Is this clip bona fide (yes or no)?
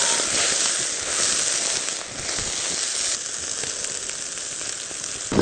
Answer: yes